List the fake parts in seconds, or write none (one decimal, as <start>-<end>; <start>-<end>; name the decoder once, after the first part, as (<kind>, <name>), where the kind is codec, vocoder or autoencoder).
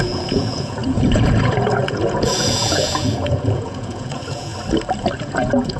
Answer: 0.0-4.5 (vocoder, Vocos); 5.2-5.8